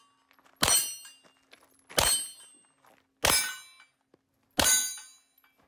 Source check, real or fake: real